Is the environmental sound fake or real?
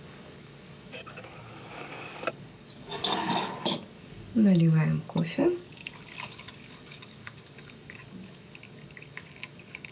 fake